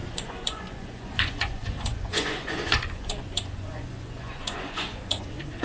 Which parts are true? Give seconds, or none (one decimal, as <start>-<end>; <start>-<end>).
none